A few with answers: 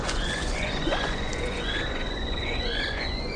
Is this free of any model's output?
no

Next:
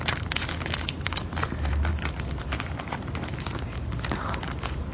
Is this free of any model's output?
no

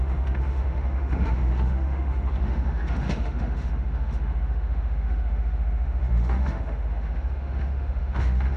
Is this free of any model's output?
no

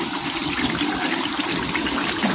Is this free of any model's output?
yes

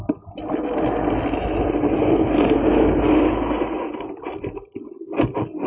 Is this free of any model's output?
yes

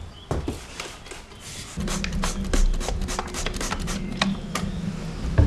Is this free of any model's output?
yes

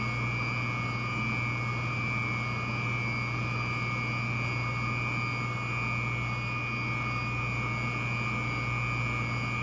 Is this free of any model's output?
yes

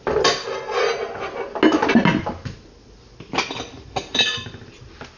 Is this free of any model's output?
yes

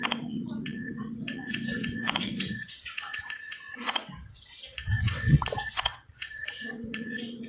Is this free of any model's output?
no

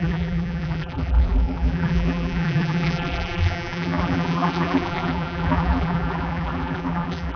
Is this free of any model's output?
no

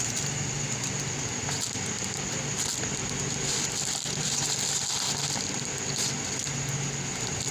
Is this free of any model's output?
yes